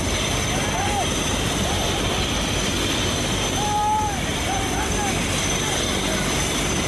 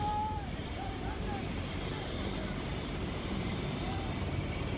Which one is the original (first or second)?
first